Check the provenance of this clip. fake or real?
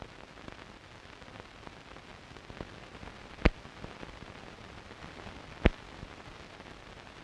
real